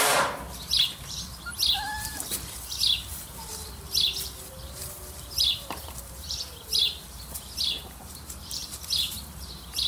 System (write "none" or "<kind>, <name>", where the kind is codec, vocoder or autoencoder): vocoder, BigVGAN v2